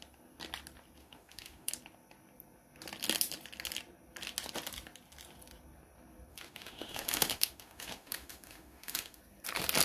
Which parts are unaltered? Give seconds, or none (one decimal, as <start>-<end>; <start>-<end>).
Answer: 0.0-1.0; 1.7-6.3; 9.2-9.8